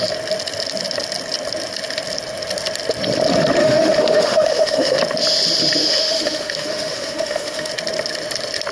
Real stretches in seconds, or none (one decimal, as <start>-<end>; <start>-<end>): 0.0-3.6; 5.0-5.8; 7.7-8.7